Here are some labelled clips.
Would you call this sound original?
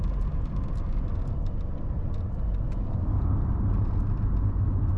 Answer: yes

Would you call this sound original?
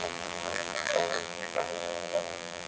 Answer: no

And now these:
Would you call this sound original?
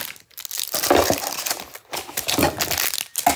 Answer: yes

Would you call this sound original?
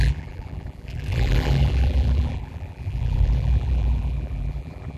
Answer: no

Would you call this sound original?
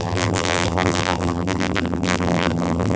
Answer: no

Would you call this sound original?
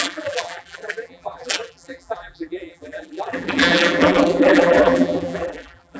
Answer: no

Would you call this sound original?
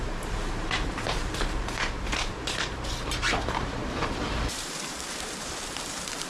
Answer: no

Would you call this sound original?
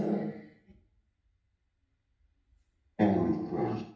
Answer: yes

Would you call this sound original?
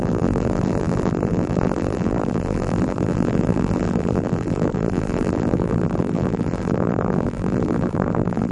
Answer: no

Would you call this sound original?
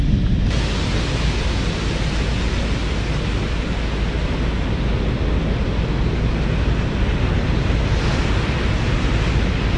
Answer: yes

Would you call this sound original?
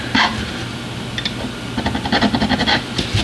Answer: yes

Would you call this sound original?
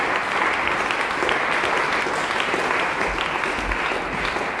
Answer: yes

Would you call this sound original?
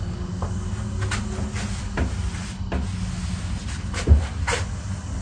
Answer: yes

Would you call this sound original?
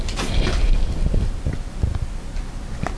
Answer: yes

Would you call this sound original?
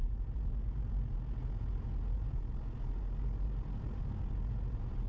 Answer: yes